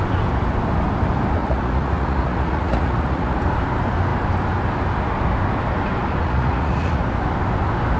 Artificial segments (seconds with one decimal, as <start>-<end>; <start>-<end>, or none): 1.4-3.4; 6.2-7.0